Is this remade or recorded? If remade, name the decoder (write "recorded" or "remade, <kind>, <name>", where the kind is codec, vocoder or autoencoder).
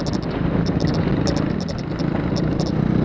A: recorded